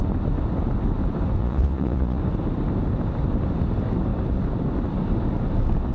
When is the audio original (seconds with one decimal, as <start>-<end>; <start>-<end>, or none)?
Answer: 0.0-1.4; 2.2-5.9